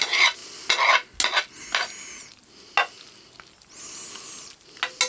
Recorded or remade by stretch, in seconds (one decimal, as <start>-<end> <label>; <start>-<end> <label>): 0.0-5.1 recorded